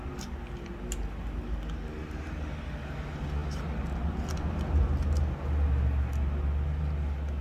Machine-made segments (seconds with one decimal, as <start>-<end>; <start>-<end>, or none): none

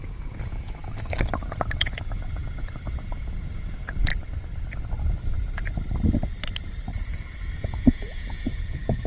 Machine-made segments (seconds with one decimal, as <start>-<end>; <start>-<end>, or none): 0.0-0.8; 1.8-4.1; 7.5-9.1

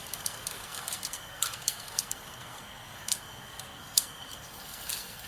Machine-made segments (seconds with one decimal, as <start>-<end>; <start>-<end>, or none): 0.0-5.3

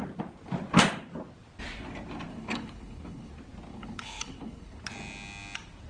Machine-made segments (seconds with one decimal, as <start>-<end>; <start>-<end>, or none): 2.3-3.3; 3.7-4.8